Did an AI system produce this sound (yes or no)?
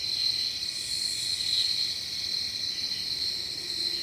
no